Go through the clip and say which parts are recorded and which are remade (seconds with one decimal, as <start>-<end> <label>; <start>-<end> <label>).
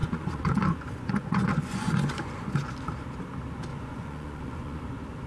0.0-2.7 remade; 2.7-3.7 recorded; 3.7-4.8 remade; 4.8-5.3 recorded